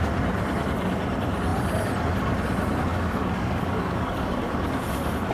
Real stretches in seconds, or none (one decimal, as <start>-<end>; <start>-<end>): 0.0-2.9; 4.8-5.3

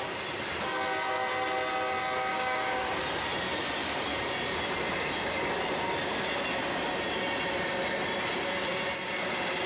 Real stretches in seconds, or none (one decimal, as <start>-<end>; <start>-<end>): 0.0-2.3; 2.9-9.7

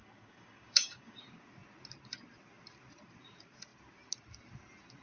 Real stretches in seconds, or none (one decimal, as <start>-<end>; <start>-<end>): 1.2-5.0

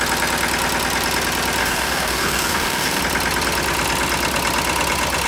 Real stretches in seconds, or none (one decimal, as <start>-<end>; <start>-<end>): 0.0-1.6; 3.0-5.3

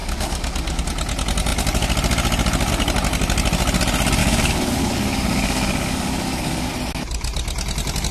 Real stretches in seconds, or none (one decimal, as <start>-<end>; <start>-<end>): 0.8-4.2; 6.7-8.1

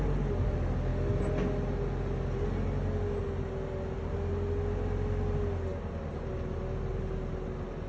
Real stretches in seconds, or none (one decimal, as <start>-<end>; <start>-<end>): 0.0-7.9